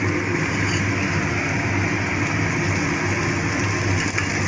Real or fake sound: real